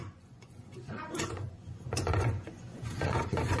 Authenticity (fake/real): fake